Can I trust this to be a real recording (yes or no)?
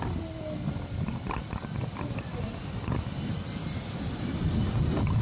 yes